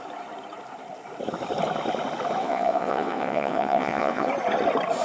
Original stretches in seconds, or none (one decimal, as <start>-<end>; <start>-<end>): 0.0-2.4; 4.3-5.0